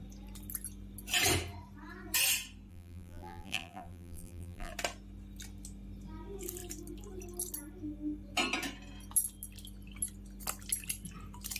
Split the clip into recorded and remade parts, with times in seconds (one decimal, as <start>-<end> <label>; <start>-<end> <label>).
0.0-2.7 recorded; 2.7-4.7 remade; 4.7-11.6 recorded